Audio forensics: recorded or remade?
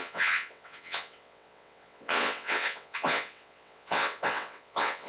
remade